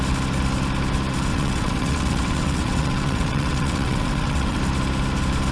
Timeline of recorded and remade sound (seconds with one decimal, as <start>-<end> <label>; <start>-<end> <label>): 0.0-1.3 recorded; 1.3-4.6 remade; 4.6-5.5 recorded